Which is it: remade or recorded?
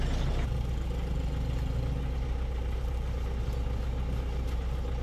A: recorded